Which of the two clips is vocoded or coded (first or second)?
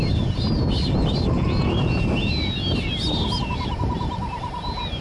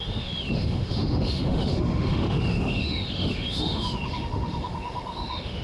second